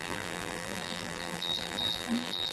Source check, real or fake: fake